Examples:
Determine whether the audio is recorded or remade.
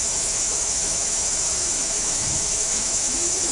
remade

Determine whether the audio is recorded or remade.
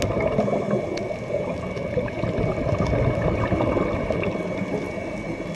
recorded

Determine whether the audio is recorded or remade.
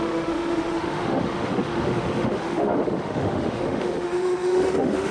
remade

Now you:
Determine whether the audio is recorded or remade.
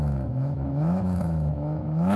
remade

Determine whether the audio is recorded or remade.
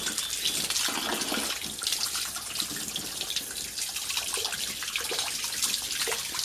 recorded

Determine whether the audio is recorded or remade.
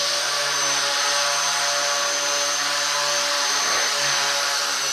recorded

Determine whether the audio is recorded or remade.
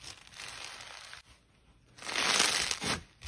recorded